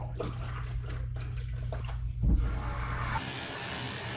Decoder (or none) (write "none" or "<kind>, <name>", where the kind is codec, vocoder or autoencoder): none